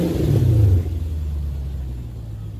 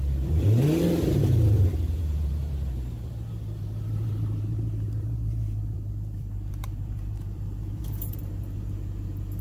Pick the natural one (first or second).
first